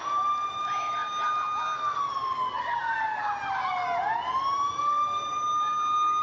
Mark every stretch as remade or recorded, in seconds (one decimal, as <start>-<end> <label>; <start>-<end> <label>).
0.0-6.2 recorded